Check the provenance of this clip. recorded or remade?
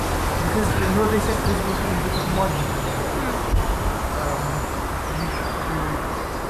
recorded